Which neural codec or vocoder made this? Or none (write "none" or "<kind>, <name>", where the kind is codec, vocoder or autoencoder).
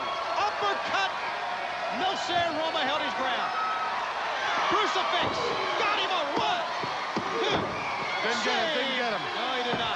none